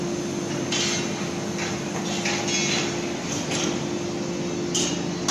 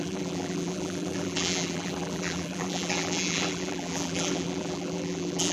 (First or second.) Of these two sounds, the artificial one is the second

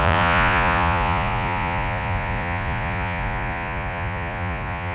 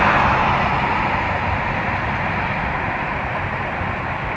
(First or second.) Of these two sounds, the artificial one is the first